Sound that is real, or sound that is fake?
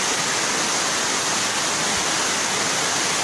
real